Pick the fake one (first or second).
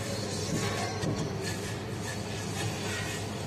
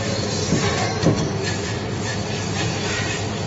second